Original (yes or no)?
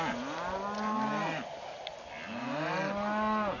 yes